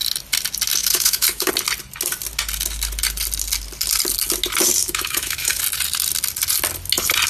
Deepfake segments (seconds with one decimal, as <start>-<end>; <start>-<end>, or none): 0.8-1.5; 4.8-5.6

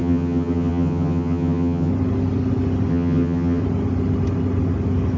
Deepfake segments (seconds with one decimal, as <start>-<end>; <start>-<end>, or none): 0.0-1.9; 2.9-3.6